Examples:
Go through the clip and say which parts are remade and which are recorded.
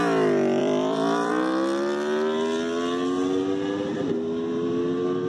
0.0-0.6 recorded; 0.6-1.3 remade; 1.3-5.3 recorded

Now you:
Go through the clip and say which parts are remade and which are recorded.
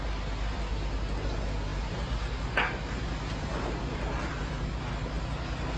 0.0-5.8 recorded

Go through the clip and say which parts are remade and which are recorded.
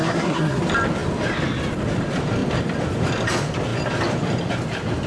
0.0-0.6 remade; 0.6-5.1 recorded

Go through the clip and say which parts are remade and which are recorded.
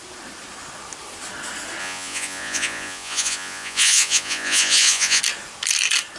0.0-1.8 recorded; 1.8-5.2 remade; 5.2-6.2 recorded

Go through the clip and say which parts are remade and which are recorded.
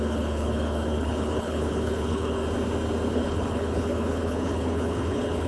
0.0-2.4 remade; 2.4-3.1 recorded; 3.1-5.5 remade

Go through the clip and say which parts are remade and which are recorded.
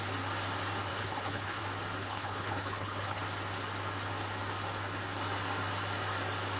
0.0-0.9 recorded; 0.9-1.6 remade; 1.6-2.0 recorded; 2.0-3.2 remade; 3.2-6.6 recorded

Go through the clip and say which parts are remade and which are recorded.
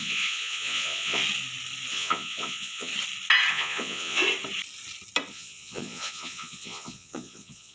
0.0-1.2 remade; 1.2-1.9 recorded; 1.9-2.9 remade; 2.9-3.5 recorded; 3.5-4.2 remade; 4.2-5.3 recorded; 5.3-7.7 remade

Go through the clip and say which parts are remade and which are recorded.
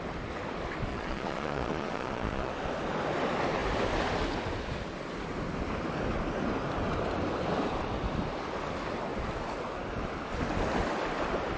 0.0-0.9 recorded; 0.9-2.5 remade; 2.5-11.6 recorded